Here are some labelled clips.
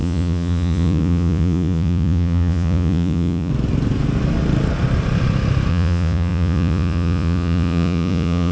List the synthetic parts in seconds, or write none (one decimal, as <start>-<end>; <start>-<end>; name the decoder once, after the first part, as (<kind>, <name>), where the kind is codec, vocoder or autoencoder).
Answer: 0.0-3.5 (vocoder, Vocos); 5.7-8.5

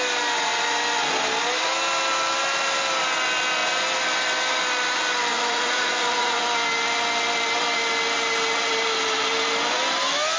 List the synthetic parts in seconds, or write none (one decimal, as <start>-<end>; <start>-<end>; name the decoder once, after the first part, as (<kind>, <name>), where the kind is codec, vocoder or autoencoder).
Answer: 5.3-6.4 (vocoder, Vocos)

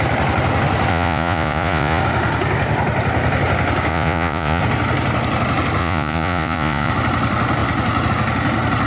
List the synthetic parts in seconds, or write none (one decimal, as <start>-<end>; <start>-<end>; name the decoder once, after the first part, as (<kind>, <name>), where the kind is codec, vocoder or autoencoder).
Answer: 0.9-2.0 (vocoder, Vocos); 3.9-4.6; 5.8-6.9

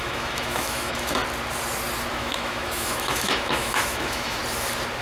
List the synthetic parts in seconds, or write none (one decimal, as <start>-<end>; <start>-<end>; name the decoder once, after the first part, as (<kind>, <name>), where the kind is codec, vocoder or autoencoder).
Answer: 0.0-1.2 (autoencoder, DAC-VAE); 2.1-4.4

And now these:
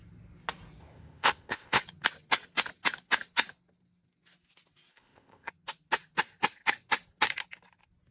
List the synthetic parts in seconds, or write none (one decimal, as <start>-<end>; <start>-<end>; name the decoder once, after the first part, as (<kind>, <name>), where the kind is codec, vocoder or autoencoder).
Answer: 0.8-1.8 (codec, ZipCodec); 4.9-5.5